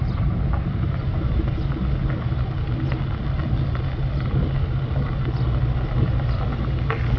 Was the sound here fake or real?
real